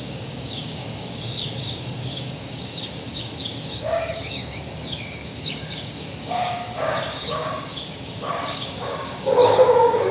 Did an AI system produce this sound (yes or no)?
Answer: yes